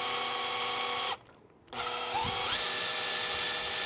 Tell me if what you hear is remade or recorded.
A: recorded